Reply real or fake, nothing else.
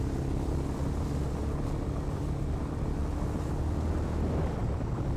real